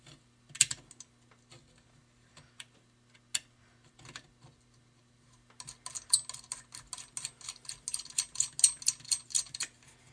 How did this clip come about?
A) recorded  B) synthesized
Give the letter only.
A